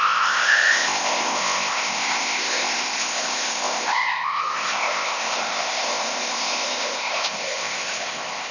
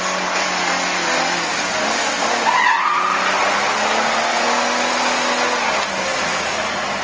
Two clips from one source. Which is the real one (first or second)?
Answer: second